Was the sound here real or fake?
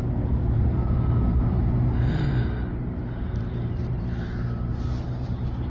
fake